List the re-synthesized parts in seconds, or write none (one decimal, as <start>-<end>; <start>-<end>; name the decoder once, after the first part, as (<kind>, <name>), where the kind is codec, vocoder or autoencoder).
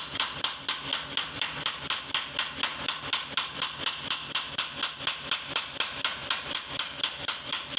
none